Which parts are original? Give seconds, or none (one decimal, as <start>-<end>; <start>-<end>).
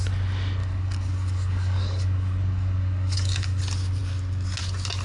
0.0-0.6; 3.6-5.0